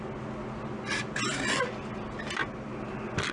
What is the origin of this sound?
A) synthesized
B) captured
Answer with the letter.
B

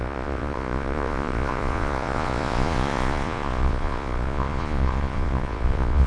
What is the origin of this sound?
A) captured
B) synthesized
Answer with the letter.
B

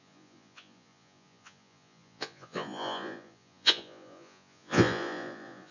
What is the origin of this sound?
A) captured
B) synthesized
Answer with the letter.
B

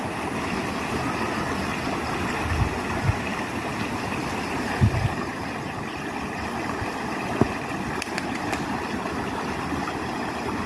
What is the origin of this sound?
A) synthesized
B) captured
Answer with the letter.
B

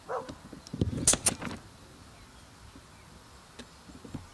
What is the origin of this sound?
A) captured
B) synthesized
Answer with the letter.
A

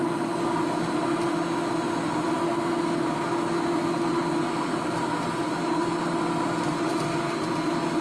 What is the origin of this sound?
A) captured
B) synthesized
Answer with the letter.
A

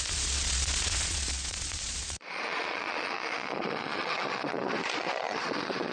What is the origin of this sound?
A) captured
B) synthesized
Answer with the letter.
B